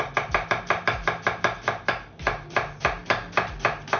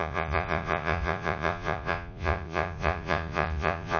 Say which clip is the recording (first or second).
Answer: first